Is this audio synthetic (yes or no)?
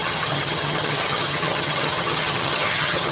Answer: yes